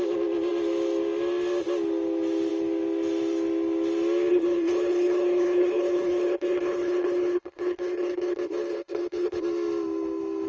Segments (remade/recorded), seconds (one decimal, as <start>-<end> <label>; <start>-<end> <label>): 0.0-4.3 recorded; 4.3-9.4 remade; 9.4-10.5 recorded